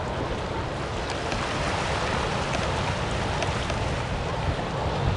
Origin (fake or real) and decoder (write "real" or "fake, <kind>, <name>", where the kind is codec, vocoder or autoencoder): real